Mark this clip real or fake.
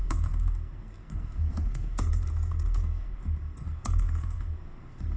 fake